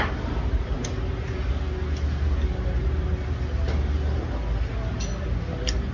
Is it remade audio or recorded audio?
recorded